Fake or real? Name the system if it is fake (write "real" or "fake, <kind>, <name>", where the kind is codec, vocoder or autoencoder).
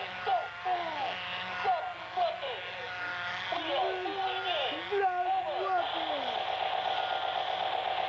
real